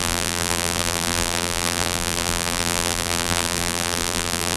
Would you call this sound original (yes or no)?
no